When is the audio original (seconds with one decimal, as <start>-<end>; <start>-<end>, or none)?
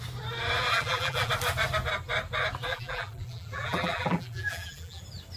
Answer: 0.0-0.7; 1.3-2.7; 5.0-5.4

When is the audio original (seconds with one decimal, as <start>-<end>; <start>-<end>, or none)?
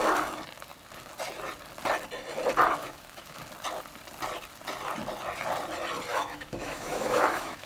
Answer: 0.0-2.8; 3.4-6.1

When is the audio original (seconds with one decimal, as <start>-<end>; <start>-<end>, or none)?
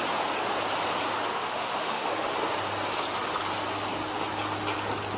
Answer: 0.0-1.3; 2.1-5.2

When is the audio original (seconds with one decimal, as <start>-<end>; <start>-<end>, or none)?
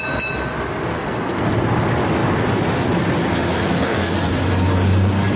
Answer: 0.0-0.9; 1.5-3.6; 4.3-5.4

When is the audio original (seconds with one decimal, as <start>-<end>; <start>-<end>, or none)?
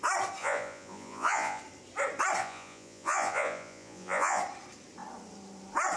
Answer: 0.0-0.4; 1.6-2.4; 4.4-6.0